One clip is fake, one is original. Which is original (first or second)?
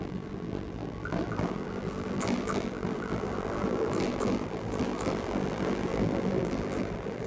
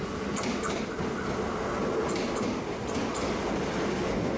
second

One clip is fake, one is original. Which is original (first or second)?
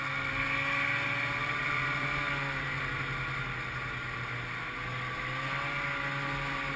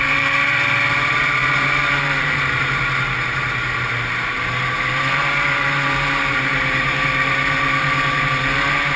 first